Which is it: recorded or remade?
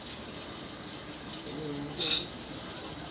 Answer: recorded